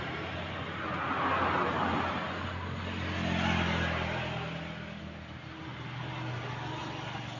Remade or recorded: recorded